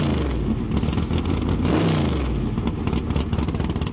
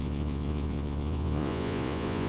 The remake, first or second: second